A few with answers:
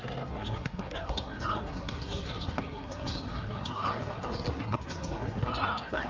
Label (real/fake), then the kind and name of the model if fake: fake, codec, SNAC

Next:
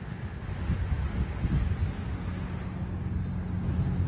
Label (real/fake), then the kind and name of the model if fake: real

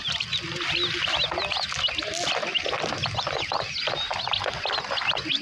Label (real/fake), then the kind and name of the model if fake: real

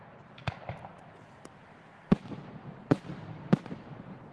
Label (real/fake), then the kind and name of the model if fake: real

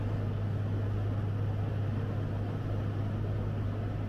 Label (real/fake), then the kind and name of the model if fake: real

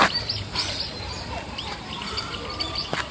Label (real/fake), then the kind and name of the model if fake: real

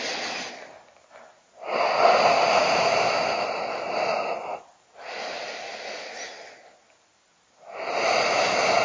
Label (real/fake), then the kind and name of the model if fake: real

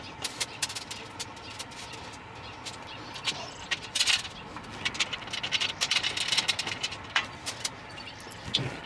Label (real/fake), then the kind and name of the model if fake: real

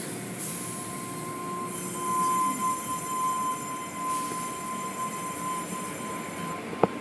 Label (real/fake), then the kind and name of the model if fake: real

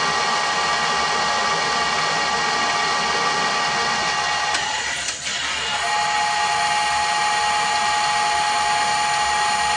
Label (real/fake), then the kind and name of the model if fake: real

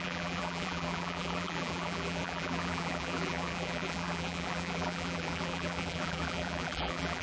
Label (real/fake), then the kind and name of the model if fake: fake, vocoder, BigVGAN v2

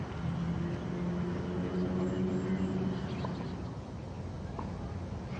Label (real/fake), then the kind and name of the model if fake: real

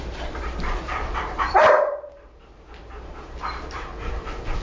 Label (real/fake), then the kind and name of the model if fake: fake, vocoder, BigVGAN v2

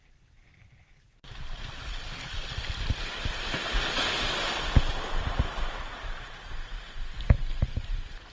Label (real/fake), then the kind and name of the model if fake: real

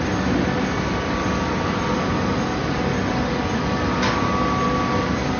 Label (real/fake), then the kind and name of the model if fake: real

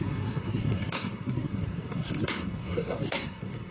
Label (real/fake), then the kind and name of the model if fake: fake, codec, SNAC